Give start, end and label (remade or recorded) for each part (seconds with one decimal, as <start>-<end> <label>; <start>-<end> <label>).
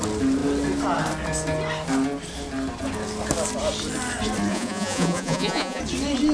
0.0-4.5 recorded; 4.5-5.8 remade; 5.8-6.3 recorded